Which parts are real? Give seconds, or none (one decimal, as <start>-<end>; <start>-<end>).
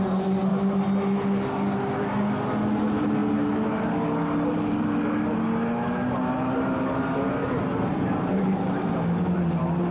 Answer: 0.0-7.4; 8.9-9.9